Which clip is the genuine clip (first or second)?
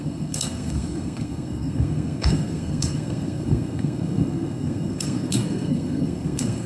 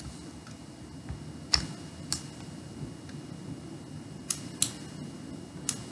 second